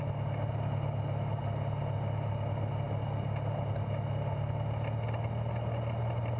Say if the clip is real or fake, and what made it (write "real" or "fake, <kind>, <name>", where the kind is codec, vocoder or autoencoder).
real